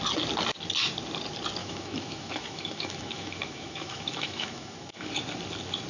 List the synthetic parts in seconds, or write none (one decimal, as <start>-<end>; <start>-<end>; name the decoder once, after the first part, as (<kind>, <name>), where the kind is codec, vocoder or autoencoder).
1.6-5.1 (autoencoder, DAC-VAE)